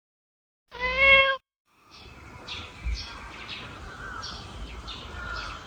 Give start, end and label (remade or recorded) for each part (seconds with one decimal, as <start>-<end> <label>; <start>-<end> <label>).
0.0-1.2 recorded; 1.2-2.0 remade; 2.0-5.7 recorded